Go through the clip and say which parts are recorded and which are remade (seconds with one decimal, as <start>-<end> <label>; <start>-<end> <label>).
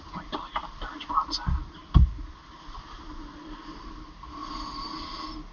0.0-5.5 recorded